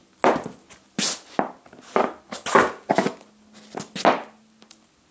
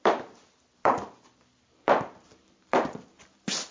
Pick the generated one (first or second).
second